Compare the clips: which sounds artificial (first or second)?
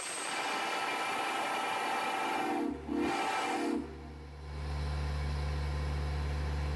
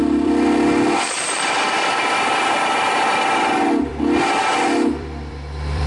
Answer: second